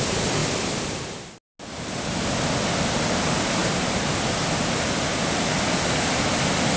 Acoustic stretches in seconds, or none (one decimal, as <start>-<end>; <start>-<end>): 0.0-3.6; 5.5-6.8